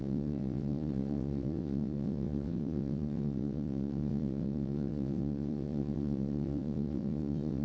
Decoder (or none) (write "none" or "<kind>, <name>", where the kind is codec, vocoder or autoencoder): vocoder, WaveNeXt